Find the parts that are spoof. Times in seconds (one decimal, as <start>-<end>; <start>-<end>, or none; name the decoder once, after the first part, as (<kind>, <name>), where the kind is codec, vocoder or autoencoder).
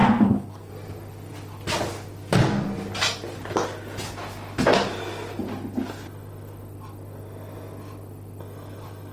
0.0-0.7 (codec, SNAC)